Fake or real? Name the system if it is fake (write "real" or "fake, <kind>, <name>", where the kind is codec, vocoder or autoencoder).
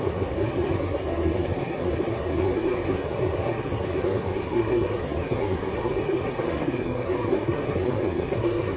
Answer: fake, codec, SNAC